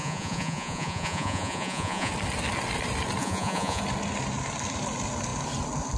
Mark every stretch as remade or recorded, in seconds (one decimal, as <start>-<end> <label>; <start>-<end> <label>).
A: 0.0-2.1 remade; 2.1-3.2 recorded; 3.2-3.8 remade; 3.8-6.0 recorded